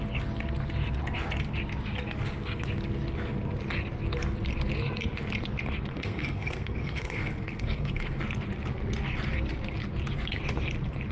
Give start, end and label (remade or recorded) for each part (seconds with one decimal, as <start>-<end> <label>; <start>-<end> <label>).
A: 0.0-5.9 recorded; 5.9-8.2 remade; 8.2-11.1 recorded